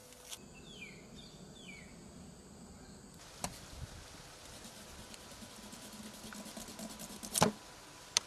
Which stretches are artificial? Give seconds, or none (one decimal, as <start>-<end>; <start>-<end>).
none